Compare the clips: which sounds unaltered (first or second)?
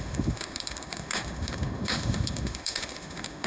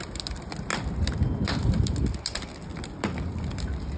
second